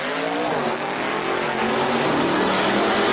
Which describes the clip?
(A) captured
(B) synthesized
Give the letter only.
A